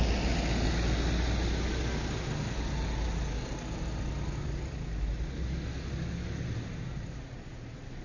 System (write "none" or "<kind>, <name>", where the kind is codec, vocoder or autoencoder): none